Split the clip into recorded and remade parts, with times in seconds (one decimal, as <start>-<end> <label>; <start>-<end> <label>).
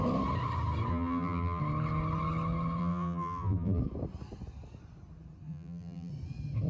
0.0-0.9 recorded; 0.9-1.6 remade; 1.6-2.8 recorded; 2.8-3.8 remade; 3.8-5.5 recorded; 5.5-6.1 remade; 6.1-6.7 recorded